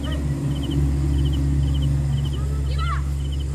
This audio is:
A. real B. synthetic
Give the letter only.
A